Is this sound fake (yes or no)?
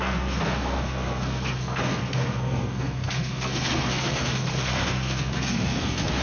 yes